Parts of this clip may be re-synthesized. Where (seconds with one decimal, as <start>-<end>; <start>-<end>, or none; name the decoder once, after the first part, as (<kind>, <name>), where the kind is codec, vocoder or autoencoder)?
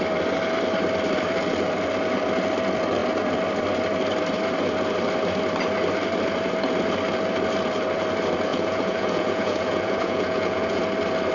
8.5-10.8 (vocoder, Vocos)